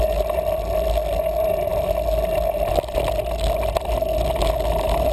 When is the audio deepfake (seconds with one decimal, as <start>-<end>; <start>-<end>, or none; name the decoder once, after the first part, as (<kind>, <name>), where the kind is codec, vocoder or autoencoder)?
none